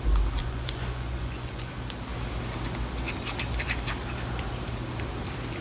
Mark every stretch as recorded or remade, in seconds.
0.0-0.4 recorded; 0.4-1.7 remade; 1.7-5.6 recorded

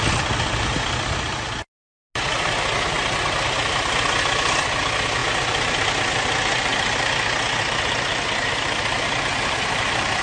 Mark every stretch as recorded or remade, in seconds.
0.0-10.2 recorded

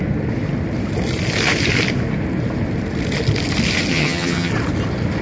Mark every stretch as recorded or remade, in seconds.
0.0-3.9 recorded; 3.9-4.5 remade; 4.5-5.2 recorded

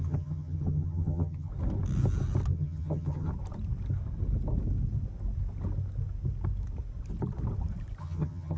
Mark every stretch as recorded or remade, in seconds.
0.0-1.5 remade; 1.5-2.5 recorded; 2.5-3.3 remade; 3.3-8.0 recorded; 8.0-8.6 remade

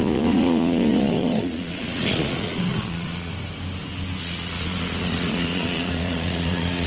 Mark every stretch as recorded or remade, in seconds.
0.0-3.3 remade; 3.3-4.2 recorded; 4.2-6.9 remade

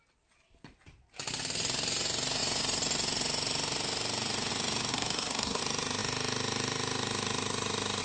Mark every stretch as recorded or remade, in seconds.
0.0-4.9 recorded; 4.9-5.6 remade; 5.6-8.0 recorded